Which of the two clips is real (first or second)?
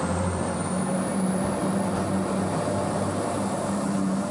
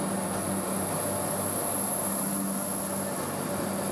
second